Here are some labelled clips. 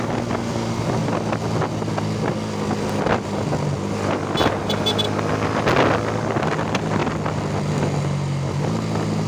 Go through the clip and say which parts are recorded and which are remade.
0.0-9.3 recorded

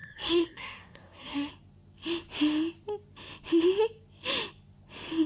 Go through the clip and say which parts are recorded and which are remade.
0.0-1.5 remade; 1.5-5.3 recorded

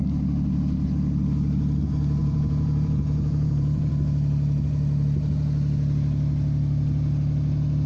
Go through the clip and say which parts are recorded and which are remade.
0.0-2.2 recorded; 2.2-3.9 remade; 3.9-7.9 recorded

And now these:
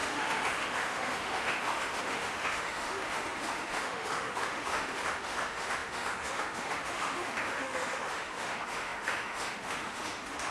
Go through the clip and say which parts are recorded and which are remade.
0.0-10.5 remade

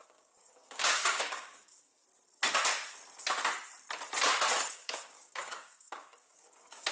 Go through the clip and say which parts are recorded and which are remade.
0.0-2.0 remade; 2.0-4.7 recorded; 4.7-6.9 remade

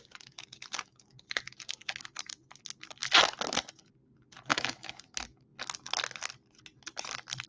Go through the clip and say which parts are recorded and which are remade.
0.0-4.5 recorded; 4.5-5.0 remade; 5.0-7.5 recorded

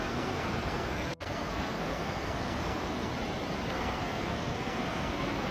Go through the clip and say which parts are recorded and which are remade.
0.0-3.1 remade; 3.1-3.7 recorded; 3.7-5.5 remade

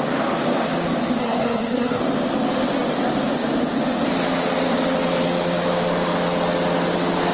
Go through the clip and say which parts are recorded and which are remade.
0.0-1.2 recorded; 1.2-2.0 remade; 2.0-7.3 recorded